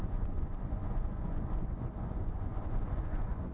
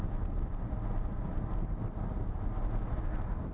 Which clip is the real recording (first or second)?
second